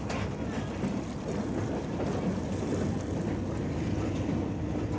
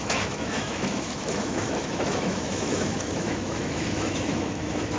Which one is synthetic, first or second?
second